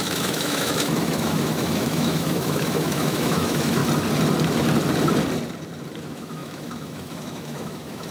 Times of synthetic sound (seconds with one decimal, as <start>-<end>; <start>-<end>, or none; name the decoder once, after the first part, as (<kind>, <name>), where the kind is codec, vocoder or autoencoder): 0.0-3.8 (autoencoder, DAC-VAE); 6.0-8.1

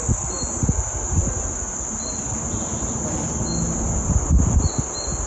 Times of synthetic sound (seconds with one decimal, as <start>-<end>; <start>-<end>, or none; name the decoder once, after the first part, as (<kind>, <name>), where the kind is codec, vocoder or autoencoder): none

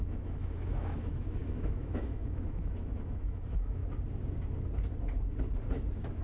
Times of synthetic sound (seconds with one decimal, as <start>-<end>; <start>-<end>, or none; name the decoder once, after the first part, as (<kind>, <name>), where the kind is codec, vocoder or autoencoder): 0.0-3.8 (autoencoder, DAC-VAE)

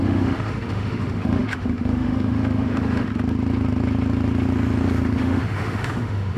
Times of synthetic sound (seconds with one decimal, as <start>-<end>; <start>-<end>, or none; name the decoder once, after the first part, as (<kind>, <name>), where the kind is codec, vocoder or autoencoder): 0.0-3.1 (autoencoder, DAC-VAE); 5.2-6.4

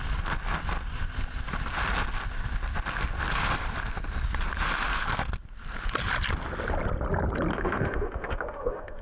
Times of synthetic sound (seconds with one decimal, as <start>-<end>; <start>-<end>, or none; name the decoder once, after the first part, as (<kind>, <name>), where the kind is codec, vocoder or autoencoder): 7.5-9.0 (autoencoder, DAC-VAE)

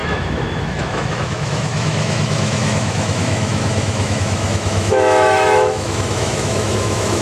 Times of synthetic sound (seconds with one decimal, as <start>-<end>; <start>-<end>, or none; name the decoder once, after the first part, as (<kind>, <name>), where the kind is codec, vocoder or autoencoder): 0.0-7.2 (autoencoder, DAC-VAE)

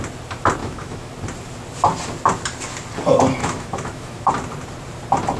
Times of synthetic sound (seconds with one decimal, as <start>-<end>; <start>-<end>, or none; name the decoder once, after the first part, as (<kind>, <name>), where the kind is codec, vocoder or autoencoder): 0.6-1.1 (autoencoder, DAC-VAE); 3.4-4.3